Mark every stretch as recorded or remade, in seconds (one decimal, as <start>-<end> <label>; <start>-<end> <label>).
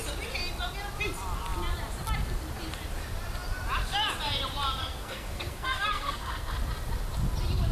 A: 0.0-4.8 recorded; 4.8-6.5 remade; 6.5-7.7 recorded